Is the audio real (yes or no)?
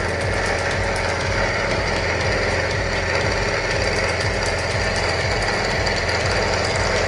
yes